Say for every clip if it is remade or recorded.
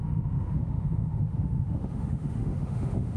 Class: remade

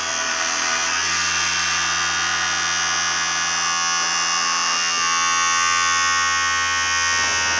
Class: recorded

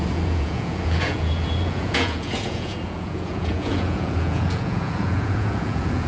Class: remade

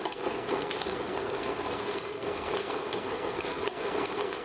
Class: remade